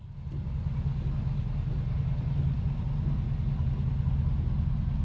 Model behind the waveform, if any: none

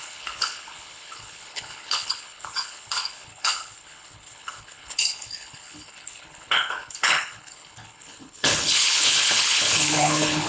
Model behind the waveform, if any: codec, HILCodec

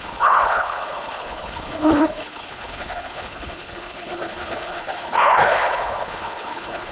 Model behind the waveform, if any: codec, HILCodec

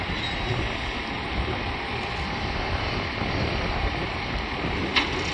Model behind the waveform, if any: none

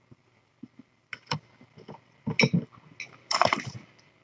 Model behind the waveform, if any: none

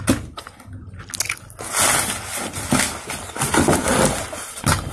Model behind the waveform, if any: none